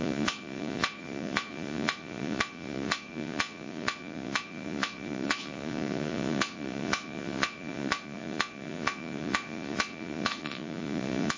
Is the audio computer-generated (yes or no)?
yes